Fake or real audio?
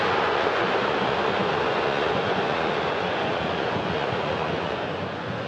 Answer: fake